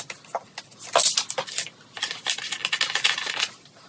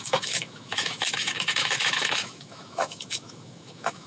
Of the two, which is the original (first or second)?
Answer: first